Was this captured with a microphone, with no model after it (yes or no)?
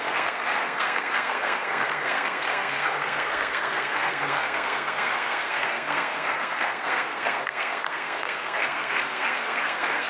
no